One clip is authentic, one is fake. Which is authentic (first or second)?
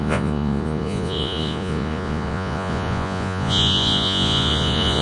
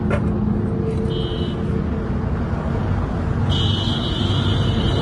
second